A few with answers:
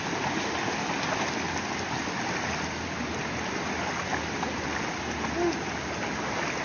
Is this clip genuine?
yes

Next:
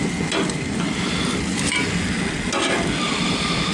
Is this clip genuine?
yes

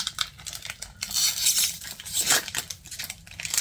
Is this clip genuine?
yes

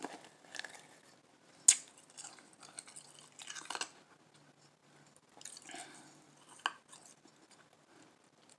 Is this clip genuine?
yes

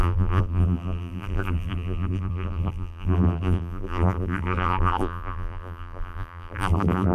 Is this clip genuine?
no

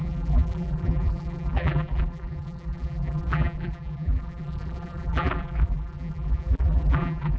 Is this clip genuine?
no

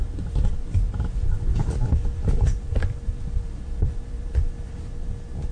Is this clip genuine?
no